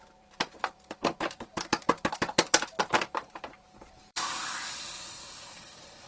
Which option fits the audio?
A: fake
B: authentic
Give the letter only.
A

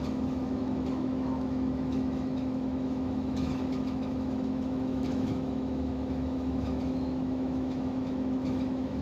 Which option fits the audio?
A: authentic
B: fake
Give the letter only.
B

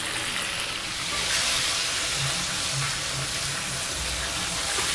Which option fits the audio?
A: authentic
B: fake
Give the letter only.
A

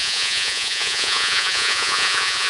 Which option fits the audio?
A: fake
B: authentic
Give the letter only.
A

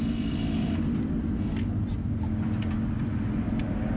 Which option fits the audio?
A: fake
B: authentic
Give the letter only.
B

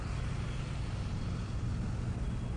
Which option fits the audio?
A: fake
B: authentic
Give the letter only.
B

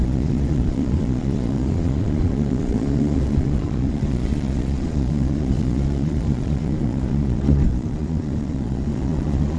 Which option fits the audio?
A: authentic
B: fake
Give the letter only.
B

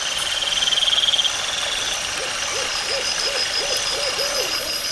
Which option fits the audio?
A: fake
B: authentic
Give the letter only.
B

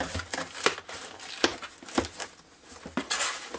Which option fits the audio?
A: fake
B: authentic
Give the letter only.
B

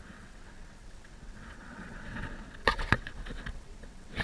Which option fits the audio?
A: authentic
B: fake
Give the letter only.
B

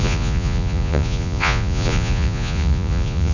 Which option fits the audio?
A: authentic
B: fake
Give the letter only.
B